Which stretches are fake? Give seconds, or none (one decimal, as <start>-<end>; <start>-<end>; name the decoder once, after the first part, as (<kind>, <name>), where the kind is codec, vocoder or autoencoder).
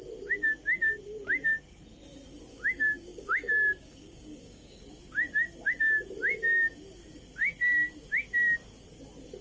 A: 2.5-4.8 (codec, DAC)